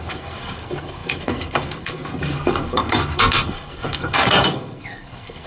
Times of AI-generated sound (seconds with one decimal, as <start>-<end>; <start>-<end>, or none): 0.0-5.5